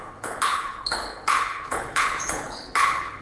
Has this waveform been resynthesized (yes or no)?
yes